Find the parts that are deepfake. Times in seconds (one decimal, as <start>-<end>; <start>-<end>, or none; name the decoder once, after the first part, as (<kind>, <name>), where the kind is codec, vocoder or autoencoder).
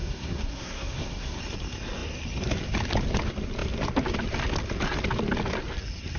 0.0-1.4 (codec, SNAC)